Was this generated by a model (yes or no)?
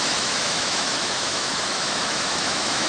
yes